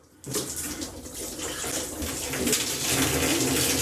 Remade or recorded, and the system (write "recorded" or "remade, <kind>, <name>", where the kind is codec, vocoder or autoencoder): recorded